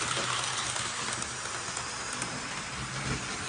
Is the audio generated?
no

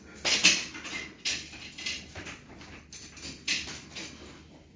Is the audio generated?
no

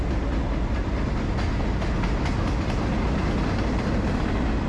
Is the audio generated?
no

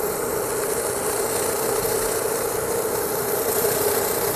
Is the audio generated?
no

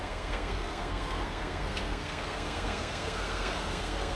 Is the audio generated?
yes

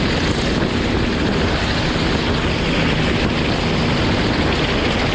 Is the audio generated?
no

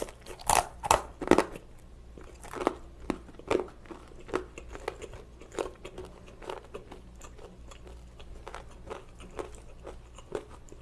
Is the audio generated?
no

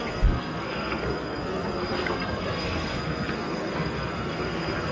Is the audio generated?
yes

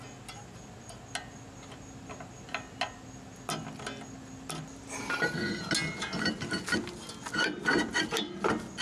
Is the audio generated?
no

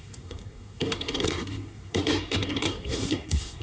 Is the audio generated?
yes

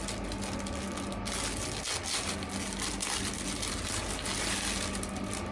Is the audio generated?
no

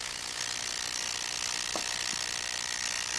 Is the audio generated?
no